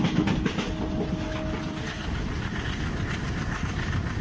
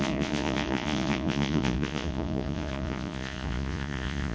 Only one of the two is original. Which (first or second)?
first